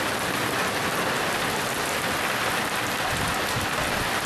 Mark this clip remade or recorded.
recorded